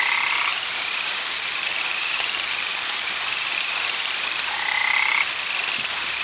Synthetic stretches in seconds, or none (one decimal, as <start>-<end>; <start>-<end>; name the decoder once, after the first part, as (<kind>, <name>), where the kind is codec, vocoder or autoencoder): 0.5-4.2 (vocoder, BigVGAN v2)